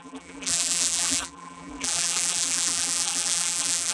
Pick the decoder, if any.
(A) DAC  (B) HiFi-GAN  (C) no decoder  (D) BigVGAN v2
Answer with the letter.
D